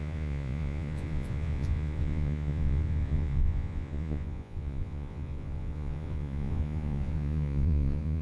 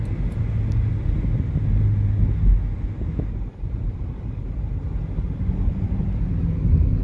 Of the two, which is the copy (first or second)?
first